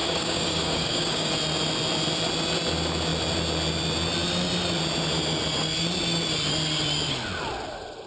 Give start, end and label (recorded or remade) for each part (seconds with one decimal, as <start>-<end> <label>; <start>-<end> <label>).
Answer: 0.0-1.3 remade; 1.3-8.1 recorded